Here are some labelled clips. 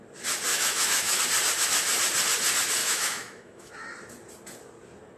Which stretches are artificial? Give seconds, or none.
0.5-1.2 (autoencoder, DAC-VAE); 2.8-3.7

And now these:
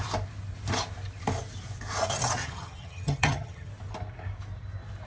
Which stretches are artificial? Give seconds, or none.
2.4-3.7 (vocoder, HiFi-GAN)

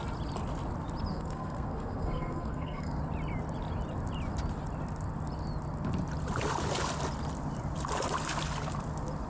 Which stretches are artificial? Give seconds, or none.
1.1-3.0 (codec, SNAC)

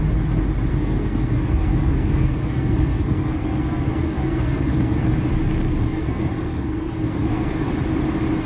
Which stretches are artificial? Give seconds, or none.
0.7-5.1 (codec, SNAC); 5.7-7.6